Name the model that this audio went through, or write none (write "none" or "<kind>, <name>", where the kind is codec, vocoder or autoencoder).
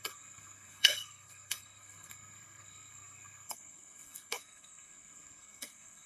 codec, SNAC